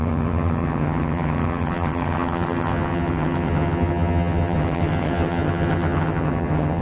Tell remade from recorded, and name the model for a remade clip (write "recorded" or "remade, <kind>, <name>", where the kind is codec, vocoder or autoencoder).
remade, vocoder, HiFi-GAN